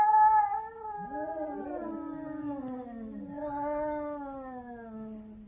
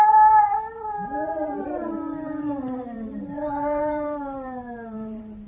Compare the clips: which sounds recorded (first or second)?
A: first